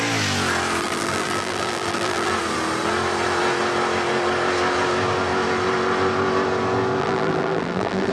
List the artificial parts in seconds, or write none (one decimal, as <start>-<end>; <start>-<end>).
0.8-2.3; 7.0-8.1